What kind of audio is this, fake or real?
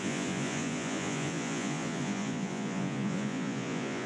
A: fake